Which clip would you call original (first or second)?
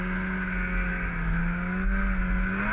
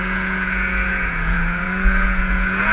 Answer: first